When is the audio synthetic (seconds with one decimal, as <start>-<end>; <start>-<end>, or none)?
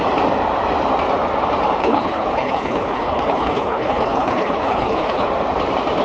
1.8-5.3